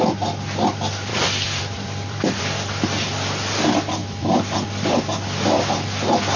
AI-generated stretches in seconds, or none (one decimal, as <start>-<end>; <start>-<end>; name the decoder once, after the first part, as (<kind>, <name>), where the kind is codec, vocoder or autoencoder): 1.1-2.4 (vocoder, BigVGAN v2); 4.0-5.0